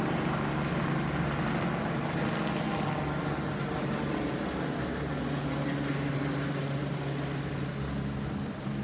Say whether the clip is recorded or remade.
recorded